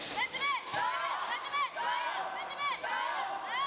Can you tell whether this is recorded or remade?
recorded